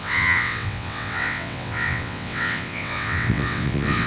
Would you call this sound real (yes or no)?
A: no